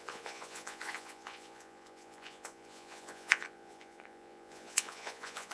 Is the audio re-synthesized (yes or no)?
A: yes